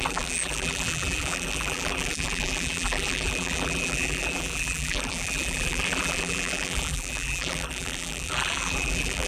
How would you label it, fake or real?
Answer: fake